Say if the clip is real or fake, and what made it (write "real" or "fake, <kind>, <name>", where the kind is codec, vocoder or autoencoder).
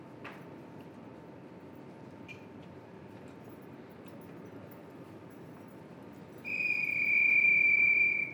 real